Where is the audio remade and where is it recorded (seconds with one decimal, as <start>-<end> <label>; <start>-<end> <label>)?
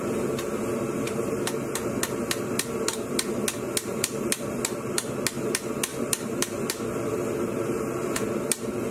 0.0-3.9 recorded; 3.9-4.4 remade; 4.4-5.9 recorded; 5.9-6.7 remade; 6.7-8.9 recorded